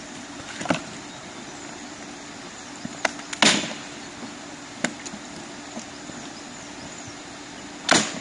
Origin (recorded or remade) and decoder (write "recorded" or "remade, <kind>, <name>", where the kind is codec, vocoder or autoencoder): recorded